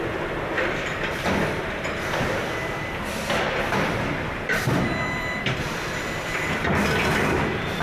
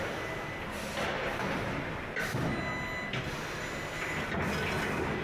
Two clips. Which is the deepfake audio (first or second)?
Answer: first